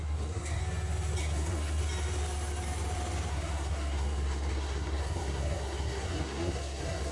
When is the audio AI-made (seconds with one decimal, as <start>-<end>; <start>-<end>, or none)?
0.0-0.6; 1.2-1.8; 3.3-7.1